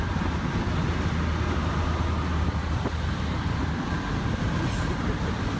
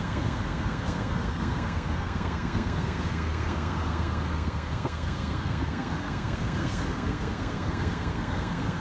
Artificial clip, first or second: second